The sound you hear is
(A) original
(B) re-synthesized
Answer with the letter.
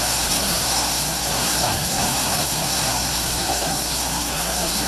B